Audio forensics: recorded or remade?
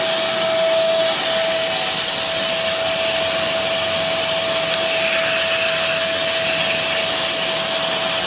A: recorded